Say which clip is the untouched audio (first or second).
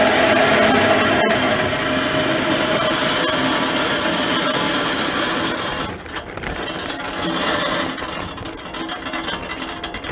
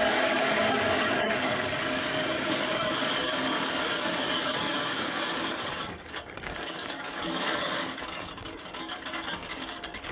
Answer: first